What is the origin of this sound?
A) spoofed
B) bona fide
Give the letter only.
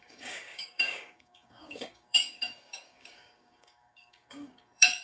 A